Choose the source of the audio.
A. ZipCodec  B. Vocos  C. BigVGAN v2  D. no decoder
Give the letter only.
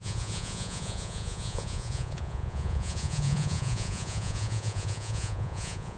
B